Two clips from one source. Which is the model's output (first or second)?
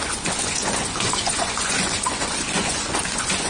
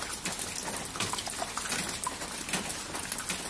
first